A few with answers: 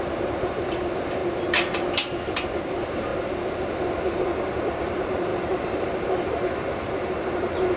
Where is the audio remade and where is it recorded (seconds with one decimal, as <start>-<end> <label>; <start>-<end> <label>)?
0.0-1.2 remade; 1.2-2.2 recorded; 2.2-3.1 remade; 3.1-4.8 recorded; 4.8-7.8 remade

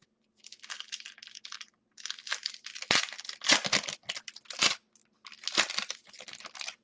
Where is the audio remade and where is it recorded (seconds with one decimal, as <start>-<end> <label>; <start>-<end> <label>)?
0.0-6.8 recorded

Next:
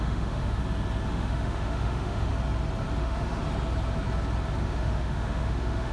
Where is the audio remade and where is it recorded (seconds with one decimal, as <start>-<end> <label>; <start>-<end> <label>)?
0.0-0.6 remade; 0.6-1.1 recorded; 1.1-2.3 remade; 2.3-3.0 recorded; 3.0-3.4 remade; 3.4-4.6 recorded; 4.6-5.9 remade

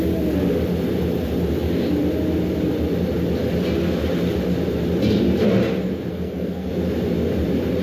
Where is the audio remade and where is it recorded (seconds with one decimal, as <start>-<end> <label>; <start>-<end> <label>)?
0.0-6.1 recorded; 6.1-6.7 remade; 6.7-7.8 recorded

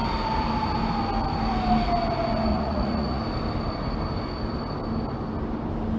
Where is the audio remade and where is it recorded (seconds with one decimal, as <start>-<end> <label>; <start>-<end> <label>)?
0.0-2.5 recorded; 2.5-3.2 remade; 3.2-6.0 recorded

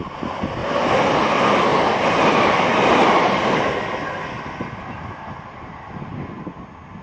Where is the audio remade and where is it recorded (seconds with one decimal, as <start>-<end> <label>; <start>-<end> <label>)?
0.0-7.0 recorded

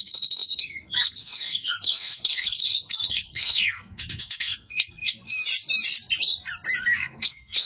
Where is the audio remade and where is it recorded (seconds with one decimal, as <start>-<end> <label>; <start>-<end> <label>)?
0.0-5.4 remade; 5.4-6.8 recorded; 6.8-7.7 remade